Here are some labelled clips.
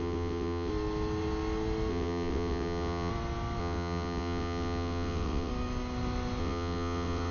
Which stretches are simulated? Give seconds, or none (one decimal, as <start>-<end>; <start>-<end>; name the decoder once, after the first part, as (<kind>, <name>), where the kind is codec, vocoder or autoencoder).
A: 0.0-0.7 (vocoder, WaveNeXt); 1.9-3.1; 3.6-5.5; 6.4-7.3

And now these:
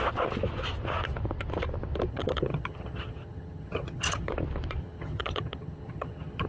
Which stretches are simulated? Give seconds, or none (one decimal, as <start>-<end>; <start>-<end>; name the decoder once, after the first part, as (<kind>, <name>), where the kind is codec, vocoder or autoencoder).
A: 2.1-4.3 (vocoder, HiFi-GAN); 4.8-6.5

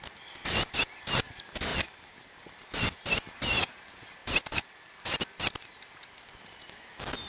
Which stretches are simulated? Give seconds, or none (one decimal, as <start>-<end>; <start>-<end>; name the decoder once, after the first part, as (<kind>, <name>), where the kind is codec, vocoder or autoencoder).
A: none

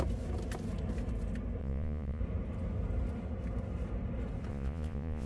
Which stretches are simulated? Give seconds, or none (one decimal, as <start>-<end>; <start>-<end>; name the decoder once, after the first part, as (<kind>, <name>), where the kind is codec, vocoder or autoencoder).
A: 1.6-2.2 (vocoder, Vocos); 4.5-5.3

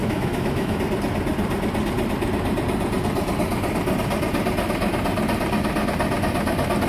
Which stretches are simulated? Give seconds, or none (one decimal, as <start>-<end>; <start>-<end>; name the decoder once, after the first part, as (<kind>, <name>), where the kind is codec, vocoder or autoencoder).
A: 0.0-0.8 (autoencoder, DAC-VAE)

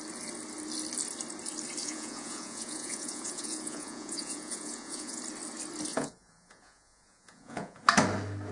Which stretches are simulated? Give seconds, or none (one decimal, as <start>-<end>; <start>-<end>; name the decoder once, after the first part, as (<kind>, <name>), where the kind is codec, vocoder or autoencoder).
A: 1.8-5.2 (vocoder, Vocos); 5.9-7.8